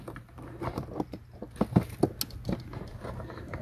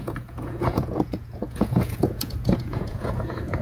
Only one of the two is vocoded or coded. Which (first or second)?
second